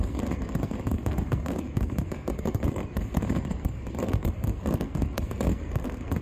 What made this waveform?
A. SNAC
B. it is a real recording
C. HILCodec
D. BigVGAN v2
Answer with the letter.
A